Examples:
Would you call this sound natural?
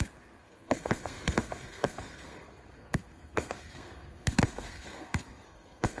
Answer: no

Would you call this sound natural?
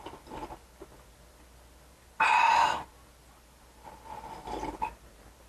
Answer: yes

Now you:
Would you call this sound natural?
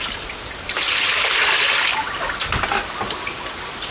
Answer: yes